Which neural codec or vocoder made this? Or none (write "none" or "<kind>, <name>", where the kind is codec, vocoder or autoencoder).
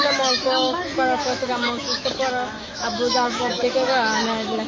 autoencoder, DAC-VAE